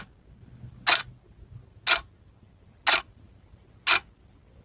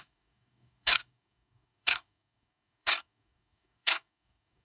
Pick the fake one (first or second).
second